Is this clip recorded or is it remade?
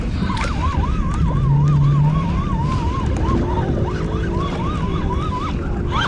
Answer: recorded